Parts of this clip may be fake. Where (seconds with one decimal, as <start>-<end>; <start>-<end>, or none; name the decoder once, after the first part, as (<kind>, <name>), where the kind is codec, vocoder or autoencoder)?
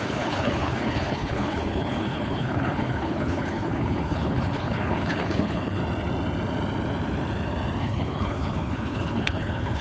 0.0-5.8 (codec, HILCodec); 7.8-9.8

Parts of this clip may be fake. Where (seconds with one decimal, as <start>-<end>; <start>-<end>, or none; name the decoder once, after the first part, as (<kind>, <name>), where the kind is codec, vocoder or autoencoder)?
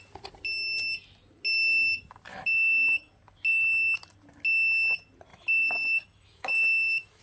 2.3-3.1 (autoencoder, DAC-VAE); 5.3-7.2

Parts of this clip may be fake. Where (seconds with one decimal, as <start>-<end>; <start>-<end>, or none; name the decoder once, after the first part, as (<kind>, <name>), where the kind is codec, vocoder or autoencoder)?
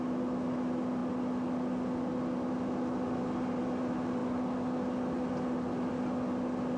none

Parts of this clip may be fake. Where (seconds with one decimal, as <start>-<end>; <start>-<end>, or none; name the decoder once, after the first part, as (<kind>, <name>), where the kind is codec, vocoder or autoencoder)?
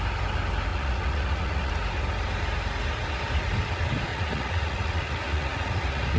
0.7-1.7 (vocoder, Vocos); 4.1-6.2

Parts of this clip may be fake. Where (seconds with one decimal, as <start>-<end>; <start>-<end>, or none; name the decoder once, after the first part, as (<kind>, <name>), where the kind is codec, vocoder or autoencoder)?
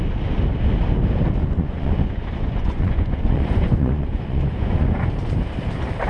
1.4-5.1 (vocoder, Vocos)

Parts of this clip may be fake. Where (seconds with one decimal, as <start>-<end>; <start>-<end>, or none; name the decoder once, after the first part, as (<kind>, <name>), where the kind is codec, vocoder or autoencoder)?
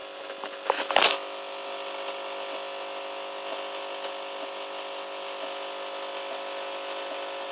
none